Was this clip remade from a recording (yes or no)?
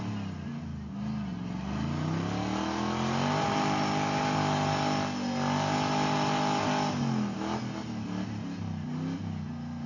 no